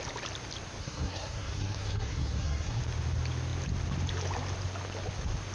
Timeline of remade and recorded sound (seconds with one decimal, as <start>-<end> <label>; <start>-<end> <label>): 0.0-0.8 recorded; 0.8-2.8 remade; 2.8-5.5 recorded